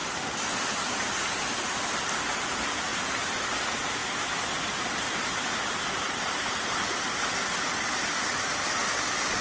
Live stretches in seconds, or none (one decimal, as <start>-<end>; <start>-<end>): 0.0-8.5